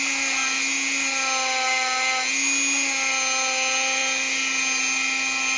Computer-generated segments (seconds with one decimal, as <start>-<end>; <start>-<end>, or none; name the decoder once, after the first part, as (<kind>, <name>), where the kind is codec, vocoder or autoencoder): none